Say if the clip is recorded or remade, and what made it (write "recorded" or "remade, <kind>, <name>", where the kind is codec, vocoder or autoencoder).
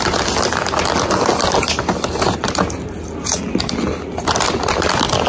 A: recorded